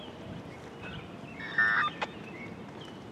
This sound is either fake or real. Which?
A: fake